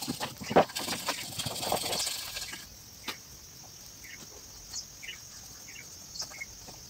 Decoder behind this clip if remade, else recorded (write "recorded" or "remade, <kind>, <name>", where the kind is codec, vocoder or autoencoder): recorded